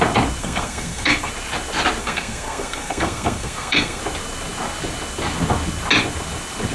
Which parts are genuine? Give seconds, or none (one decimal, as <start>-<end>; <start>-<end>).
0.0-0.4; 1.3-2.0; 4.0-6.7